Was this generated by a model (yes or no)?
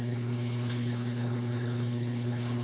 yes